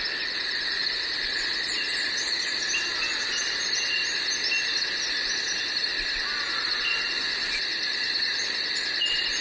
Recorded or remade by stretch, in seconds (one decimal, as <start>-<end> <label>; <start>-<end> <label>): 0.0-9.4 recorded